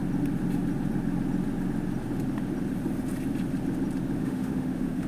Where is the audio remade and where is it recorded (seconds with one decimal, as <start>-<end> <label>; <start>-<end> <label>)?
0.0-4.2 recorded; 4.2-5.1 remade